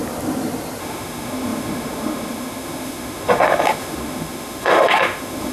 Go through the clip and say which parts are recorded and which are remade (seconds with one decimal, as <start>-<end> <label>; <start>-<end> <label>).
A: 0.0-0.8 recorded; 0.8-5.5 remade